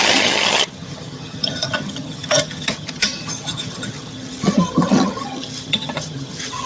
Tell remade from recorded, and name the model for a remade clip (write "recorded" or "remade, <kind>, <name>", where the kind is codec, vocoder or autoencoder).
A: remade, vocoder, HiFi-GAN